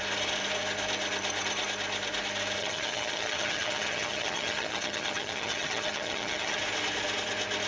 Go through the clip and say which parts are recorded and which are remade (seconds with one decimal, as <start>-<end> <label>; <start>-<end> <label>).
0.0-2.6 recorded; 2.6-6.6 remade; 6.6-7.7 recorded

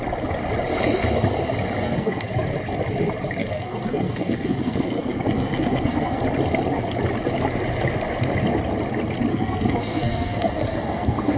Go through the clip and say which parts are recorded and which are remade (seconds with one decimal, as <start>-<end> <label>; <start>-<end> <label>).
0.0-1.8 recorded; 1.8-2.3 remade; 2.3-3.4 recorded; 3.4-6.2 remade; 6.2-9.3 recorded; 9.3-11.4 remade

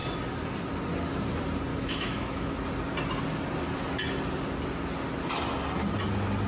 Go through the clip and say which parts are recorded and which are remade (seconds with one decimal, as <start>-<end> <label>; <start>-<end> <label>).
0.0-1.7 recorded; 1.7-2.6 remade; 2.6-6.5 recorded

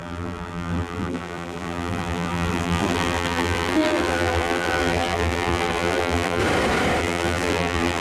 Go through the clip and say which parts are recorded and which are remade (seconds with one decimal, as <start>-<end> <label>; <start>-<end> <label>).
0.0-6.4 remade; 6.4-7.0 recorded; 7.0-8.0 remade

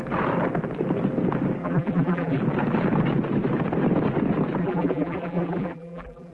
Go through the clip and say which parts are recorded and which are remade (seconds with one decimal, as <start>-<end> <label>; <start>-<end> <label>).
0.0-1.6 recorded; 1.6-2.4 remade; 2.4-4.6 recorded; 4.6-6.3 remade

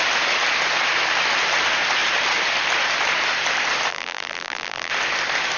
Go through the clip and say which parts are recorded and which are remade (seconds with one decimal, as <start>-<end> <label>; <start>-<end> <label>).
0.0-3.9 recorded; 3.9-4.9 remade; 4.9-5.6 recorded

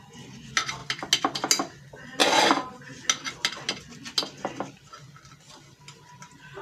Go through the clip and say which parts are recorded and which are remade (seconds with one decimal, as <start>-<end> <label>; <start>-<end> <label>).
0.0-6.6 recorded